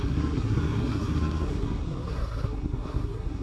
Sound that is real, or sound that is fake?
fake